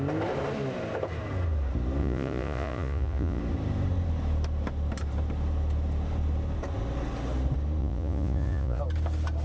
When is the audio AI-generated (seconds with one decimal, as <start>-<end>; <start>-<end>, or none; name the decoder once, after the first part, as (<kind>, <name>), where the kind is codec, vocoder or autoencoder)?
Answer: 2.0-3.4 (vocoder, Vocos); 7.8-8.8